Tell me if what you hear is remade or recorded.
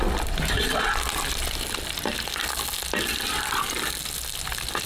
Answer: recorded